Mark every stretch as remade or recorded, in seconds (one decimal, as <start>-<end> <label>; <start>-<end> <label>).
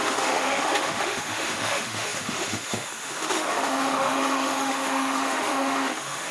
0.0-6.3 remade